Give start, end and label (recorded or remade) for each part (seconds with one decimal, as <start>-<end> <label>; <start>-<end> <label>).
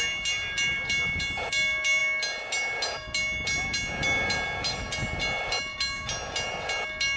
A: 0.0-7.2 recorded